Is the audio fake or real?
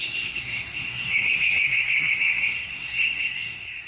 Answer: fake